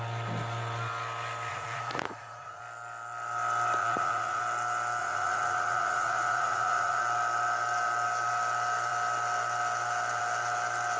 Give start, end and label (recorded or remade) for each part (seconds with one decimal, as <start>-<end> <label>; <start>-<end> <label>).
0.0-1.5 recorded; 1.5-2.6 remade; 2.6-3.8 recorded; 3.8-4.4 remade; 4.4-5.0 recorded; 5.0-7.0 remade; 7.0-11.0 recorded

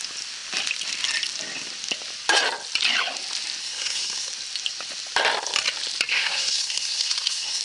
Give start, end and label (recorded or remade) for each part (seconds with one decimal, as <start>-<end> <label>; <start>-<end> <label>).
0.0-3.6 recorded; 3.6-4.3 remade; 4.3-6.1 recorded; 6.1-7.6 remade

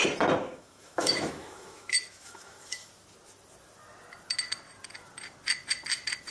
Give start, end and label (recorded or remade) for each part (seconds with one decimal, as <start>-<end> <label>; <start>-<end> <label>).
0.0-0.4 recorded; 0.4-2.9 remade; 2.9-6.3 recorded

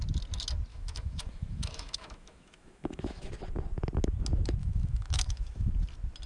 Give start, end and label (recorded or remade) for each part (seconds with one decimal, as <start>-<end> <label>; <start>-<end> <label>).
0.0-0.7 recorded; 0.7-3.3 remade; 3.3-4.6 recorded; 4.6-5.7 remade; 5.7-6.3 recorded

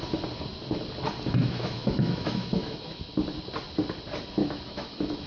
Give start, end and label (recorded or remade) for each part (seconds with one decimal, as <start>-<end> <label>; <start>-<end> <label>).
0.0-1.4 recorded; 1.4-3.1 remade; 3.1-4.4 recorded; 4.4-5.3 remade

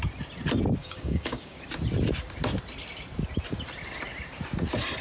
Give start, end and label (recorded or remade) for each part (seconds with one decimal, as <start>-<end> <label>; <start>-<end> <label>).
0.0-0.8 recorded; 0.8-1.6 remade; 1.6-5.0 recorded